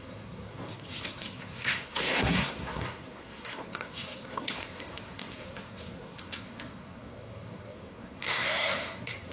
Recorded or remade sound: remade